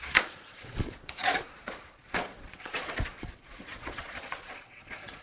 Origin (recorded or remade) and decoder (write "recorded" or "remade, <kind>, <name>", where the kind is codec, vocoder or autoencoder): remade, vocoder, Vocos